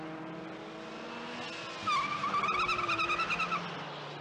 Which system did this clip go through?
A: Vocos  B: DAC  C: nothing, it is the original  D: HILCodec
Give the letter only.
C